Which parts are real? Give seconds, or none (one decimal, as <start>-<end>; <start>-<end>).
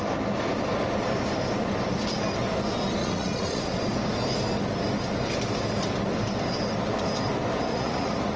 0.0-3.0; 3.6-7.7